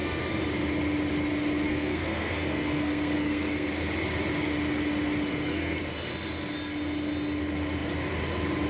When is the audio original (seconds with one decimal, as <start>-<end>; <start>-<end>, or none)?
0.0-1.7; 3.7-5.3; 5.8-8.7

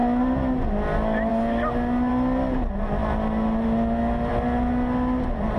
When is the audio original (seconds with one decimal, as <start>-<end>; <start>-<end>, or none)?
0.0-5.6

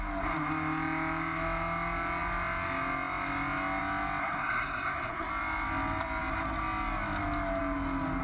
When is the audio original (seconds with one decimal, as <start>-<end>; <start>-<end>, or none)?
0.0-4.2; 5.3-8.2